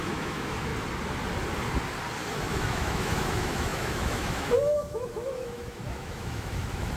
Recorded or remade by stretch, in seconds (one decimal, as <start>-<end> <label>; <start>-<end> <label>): 0.0-0.7 remade; 0.7-2.3 recorded; 2.3-7.0 remade

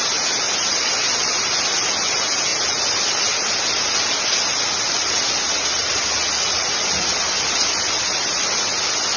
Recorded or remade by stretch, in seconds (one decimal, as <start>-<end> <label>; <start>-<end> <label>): 0.0-9.2 recorded

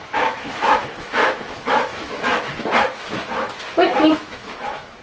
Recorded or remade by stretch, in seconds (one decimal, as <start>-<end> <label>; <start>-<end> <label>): 0.0-5.0 remade

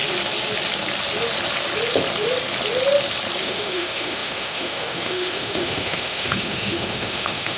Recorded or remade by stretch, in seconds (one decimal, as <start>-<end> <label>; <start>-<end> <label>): 0.0-3.4 recorded; 3.4-7.6 remade